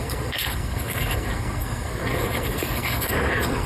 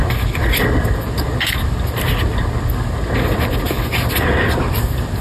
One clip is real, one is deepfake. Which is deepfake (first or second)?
first